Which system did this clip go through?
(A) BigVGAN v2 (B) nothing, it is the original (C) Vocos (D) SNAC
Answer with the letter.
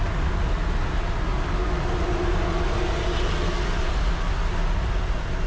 B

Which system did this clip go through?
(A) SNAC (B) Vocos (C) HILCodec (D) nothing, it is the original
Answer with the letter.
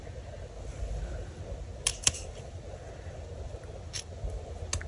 D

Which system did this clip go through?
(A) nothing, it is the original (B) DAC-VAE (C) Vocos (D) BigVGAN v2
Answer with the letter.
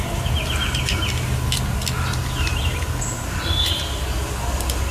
A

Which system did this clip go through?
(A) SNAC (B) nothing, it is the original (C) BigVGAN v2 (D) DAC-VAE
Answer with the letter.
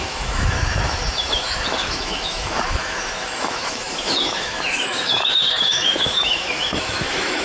D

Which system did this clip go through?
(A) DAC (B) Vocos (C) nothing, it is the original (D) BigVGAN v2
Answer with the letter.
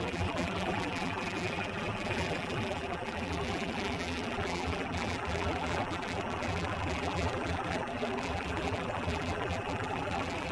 D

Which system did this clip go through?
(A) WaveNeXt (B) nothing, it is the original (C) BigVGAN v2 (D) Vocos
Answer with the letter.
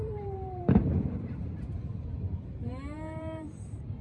C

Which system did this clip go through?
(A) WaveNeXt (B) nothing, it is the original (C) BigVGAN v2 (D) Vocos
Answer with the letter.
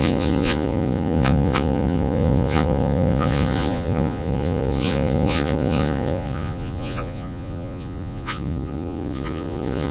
D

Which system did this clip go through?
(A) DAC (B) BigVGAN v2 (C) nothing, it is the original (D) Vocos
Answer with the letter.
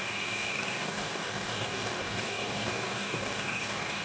A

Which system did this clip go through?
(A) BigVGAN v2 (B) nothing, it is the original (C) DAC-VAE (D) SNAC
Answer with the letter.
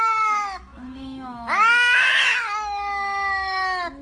C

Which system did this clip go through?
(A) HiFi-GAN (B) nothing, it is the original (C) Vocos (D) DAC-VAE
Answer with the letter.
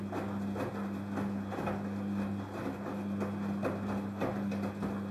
B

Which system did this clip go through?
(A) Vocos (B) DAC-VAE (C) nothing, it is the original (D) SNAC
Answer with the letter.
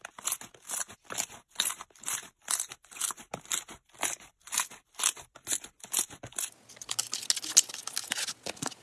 C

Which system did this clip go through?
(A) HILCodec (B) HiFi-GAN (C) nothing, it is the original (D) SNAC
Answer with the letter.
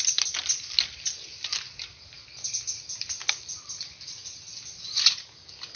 C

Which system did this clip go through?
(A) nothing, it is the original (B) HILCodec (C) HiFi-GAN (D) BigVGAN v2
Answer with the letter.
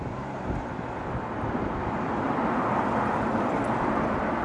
D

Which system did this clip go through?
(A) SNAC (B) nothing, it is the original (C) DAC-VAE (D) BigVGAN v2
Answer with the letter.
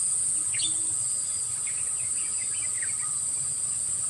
B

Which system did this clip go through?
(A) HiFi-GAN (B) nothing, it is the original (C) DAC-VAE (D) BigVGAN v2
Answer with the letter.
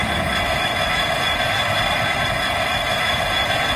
B